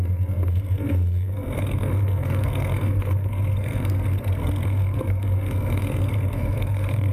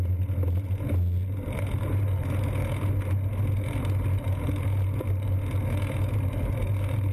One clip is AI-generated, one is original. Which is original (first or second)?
second